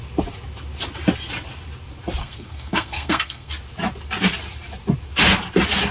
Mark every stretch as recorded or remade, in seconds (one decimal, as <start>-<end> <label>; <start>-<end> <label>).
0.0-2.2 recorded; 2.2-3.5 remade; 3.5-5.9 recorded